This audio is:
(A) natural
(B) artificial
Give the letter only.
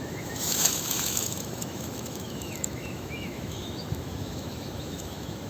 B